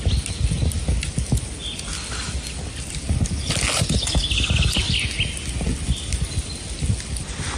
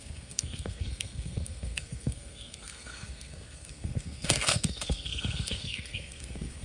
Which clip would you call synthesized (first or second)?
second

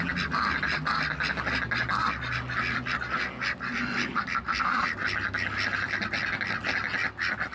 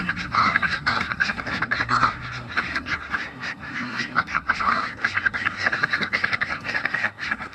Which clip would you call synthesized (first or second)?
second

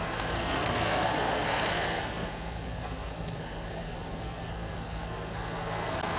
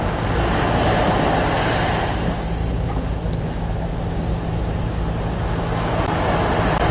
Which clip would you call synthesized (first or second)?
first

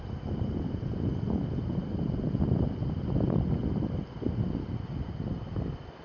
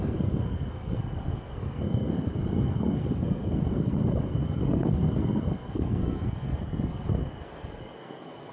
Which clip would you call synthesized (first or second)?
second